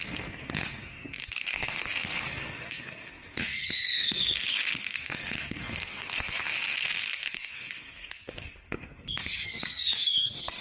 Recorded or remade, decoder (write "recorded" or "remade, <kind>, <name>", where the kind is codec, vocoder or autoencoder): remade, codec, SNAC